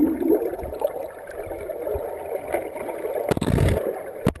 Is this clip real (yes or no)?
yes